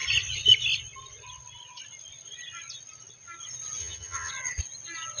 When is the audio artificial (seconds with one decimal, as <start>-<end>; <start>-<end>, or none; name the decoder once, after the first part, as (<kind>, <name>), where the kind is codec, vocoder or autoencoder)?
3.8-4.3 (vocoder, HiFi-GAN)